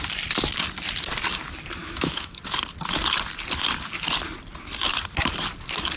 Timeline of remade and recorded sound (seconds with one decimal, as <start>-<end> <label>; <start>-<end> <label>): 0.0-1.8 recorded; 1.8-2.4 remade; 2.4-6.0 recorded